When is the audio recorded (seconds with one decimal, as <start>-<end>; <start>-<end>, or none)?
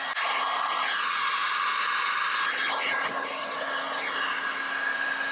0.0-5.3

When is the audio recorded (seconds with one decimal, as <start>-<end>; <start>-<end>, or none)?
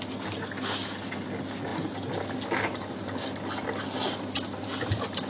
0.0-5.3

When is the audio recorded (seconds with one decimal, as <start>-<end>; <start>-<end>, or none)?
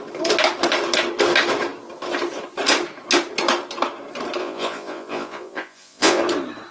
0.0-4.4; 6.2-6.7